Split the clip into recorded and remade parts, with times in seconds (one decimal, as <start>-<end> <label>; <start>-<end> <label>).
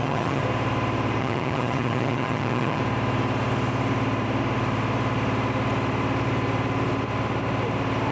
0.0-0.4 remade; 0.4-1.2 recorded; 1.2-2.8 remade; 2.8-8.1 recorded